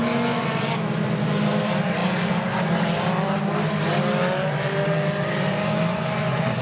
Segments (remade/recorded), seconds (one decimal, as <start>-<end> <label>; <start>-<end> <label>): 0.0-6.6 recorded